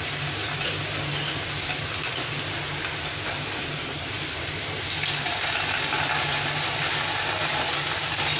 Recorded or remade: recorded